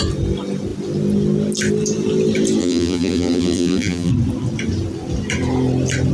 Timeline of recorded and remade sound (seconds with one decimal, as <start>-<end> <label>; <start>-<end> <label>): 0.0-2.6 recorded; 2.6-4.1 remade; 4.1-6.1 recorded

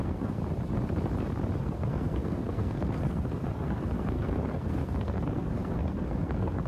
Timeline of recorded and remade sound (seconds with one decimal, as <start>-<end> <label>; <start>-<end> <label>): 0.0-0.4 remade; 0.4-1.6 recorded; 1.6-6.7 remade

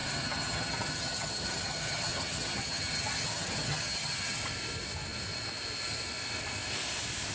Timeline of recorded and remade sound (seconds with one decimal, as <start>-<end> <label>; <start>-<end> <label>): 0.0-4.4 remade; 4.4-7.3 recorded

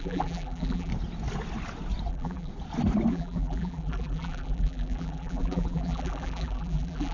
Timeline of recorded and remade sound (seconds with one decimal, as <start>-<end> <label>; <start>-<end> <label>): 0.0-0.9 remade; 0.9-2.1 recorded; 2.1-2.5 remade; 2.5-3.1 recorded; 3.1-7.1 remade